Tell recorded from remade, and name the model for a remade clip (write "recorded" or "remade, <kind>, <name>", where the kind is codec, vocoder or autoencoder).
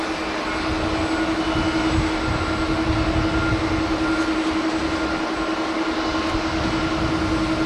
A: recorded